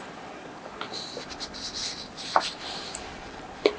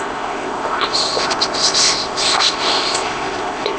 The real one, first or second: first